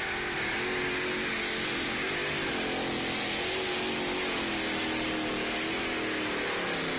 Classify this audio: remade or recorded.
recorded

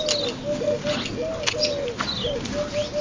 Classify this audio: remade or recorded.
recorded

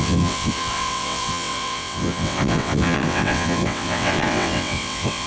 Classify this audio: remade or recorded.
remade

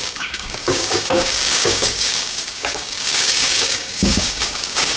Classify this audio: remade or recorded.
remade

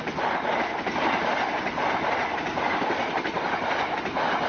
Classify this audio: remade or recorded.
recorded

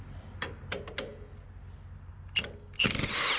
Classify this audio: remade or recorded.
recorded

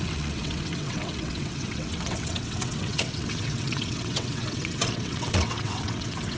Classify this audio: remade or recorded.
remade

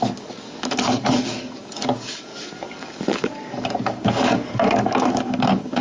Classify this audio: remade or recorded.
remade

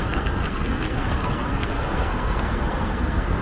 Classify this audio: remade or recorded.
remade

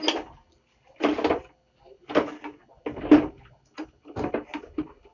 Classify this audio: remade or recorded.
recorded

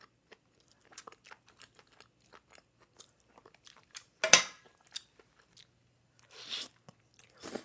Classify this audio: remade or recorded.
recorded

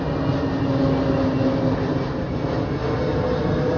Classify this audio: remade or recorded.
recorded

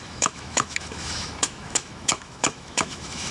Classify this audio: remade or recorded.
remade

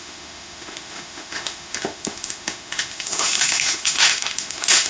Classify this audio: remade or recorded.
remade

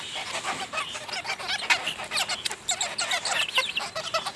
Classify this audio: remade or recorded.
recorded